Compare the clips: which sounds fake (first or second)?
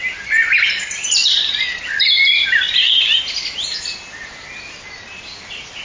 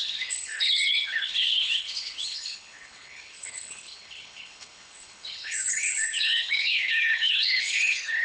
second